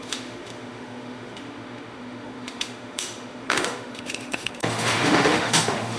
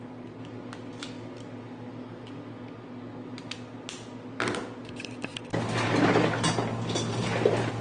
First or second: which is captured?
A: second